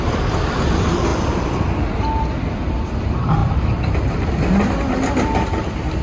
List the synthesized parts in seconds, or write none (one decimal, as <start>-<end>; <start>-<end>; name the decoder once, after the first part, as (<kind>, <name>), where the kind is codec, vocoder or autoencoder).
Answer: 0.0-1.1 (vocoder, BigVGAN v2); 3.0-3.4